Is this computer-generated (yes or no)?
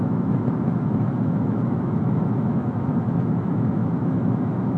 yes